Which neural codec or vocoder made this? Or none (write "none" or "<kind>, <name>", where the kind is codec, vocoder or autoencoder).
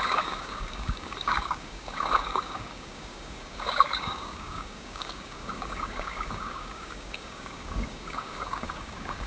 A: codec, DAC